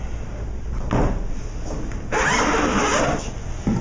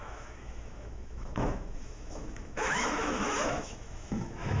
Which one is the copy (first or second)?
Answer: second